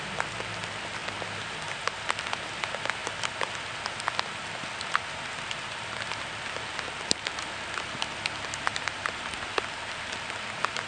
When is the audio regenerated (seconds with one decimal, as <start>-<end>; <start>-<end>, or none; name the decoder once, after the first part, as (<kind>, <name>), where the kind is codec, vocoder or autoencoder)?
none